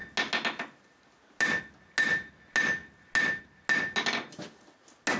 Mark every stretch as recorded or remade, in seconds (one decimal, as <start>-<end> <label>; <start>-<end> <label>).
0.0-5.2 recorded